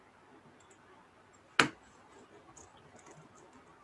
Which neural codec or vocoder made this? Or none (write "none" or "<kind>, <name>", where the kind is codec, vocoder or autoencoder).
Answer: none